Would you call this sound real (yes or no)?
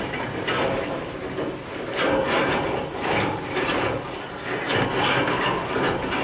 yes